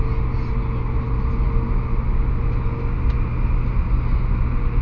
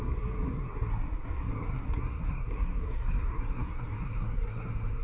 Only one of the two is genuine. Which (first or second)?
first